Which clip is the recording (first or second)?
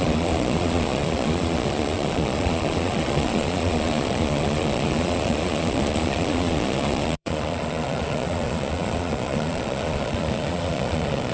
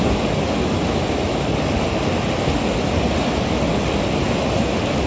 second